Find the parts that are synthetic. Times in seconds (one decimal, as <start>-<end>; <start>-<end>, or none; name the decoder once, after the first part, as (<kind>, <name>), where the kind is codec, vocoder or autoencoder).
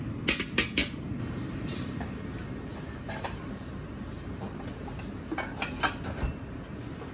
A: 0.8-2.0 (vocoder, BigVGAN v2); 2.7-3.4